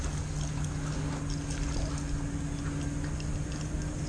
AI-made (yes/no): no